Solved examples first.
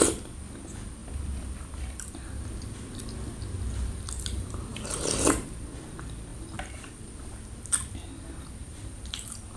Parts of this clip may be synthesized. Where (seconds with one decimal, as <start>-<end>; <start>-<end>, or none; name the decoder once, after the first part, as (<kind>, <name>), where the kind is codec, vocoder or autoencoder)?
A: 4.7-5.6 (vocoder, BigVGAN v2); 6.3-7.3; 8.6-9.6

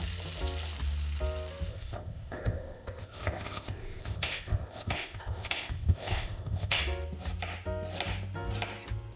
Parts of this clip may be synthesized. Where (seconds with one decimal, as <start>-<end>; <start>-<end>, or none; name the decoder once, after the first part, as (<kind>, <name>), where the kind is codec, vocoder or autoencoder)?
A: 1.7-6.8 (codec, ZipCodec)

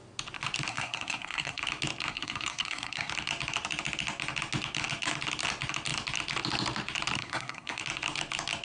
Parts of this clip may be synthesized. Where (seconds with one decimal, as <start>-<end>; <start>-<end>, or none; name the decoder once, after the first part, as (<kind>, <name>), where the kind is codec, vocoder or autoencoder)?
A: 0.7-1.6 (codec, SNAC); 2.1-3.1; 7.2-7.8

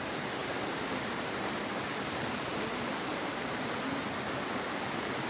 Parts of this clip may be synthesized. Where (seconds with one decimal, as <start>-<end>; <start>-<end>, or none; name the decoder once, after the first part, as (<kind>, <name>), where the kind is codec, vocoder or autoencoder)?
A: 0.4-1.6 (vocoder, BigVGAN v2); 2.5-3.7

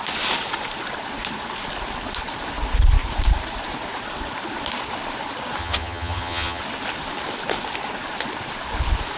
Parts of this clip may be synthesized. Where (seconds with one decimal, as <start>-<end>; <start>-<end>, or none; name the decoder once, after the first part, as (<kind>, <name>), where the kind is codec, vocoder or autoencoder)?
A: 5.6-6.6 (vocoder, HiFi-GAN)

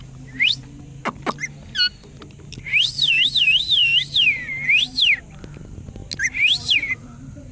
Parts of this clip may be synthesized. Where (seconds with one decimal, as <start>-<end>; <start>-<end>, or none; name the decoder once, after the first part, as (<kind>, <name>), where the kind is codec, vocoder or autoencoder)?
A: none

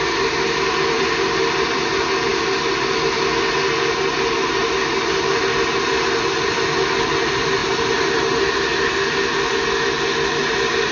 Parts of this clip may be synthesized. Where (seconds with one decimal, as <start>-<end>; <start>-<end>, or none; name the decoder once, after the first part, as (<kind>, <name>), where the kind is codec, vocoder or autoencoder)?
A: none

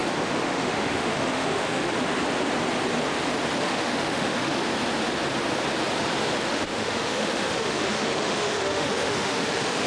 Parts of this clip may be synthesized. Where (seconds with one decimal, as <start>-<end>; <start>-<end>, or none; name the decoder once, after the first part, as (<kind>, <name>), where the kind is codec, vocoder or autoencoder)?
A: 0.0-1.9 (autoencoder, DAC-VAE); 3.6-4.6; 6.5-9.9